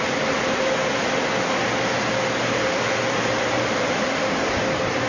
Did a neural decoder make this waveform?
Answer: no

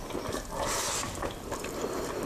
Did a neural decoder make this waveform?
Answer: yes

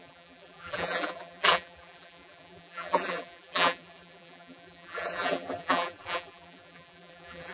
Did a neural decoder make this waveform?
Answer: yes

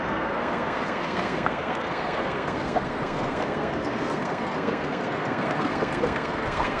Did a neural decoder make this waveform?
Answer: yes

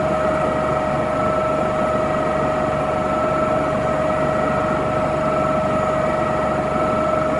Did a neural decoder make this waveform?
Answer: no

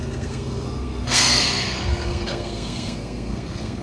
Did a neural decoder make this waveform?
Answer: yes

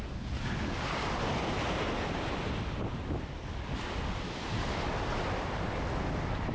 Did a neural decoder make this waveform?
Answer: no